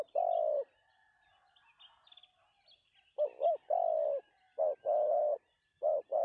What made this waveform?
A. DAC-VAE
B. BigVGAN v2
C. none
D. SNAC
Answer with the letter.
C